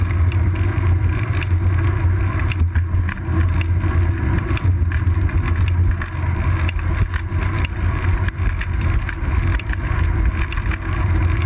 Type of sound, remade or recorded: recorded